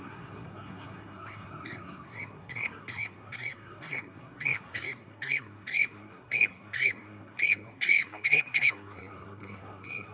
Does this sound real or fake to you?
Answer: fake